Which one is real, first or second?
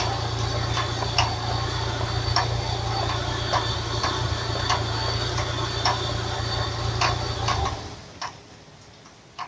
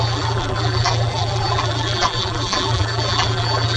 first